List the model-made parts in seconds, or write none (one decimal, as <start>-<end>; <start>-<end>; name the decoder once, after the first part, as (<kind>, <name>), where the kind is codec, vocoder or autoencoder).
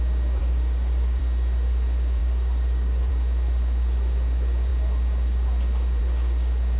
0.4-1.2 (codec, DAC); 2.2-3.1